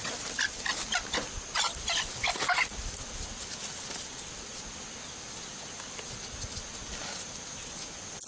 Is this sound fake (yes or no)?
no